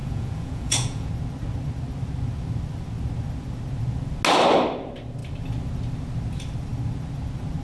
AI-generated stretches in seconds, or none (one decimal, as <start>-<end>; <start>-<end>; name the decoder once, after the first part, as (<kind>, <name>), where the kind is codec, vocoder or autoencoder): 0.0-1.1 (vocoder, Vocos)